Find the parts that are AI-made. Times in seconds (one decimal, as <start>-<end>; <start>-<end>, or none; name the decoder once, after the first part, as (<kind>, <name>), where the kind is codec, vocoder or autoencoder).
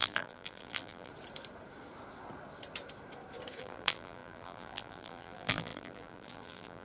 0.0-1.1 (vocoder, BigVGAN v2); 3.6-6.8